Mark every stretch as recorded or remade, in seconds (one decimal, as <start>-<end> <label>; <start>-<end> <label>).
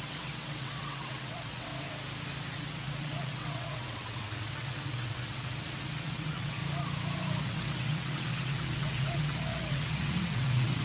0.0-1.7 remade; 1.7-2.6 recorded; 2.6-6.6 remade; 6.6-7.4 recorded; 7.4-10.8 remade